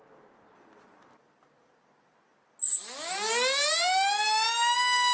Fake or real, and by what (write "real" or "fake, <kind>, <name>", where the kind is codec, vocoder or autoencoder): real